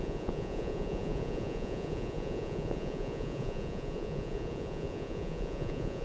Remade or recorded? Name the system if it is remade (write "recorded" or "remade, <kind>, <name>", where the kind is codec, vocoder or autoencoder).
remade, vocoder, Vocos